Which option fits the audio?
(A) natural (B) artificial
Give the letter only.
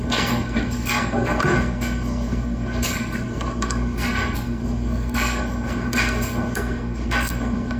B